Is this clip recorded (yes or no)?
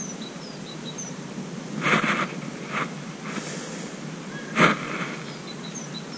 yes